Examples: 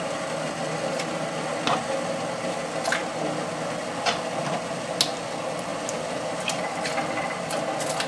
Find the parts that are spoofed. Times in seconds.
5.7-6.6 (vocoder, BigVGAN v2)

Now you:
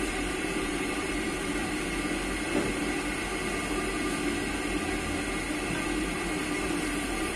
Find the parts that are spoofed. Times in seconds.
0.0-1.6 (vocoder, BigVGAN v2); 6.0-7.4

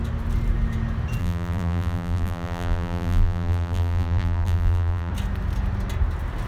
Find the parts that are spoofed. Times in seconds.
1.2-5.1 (vocoder, BigVGAN v2)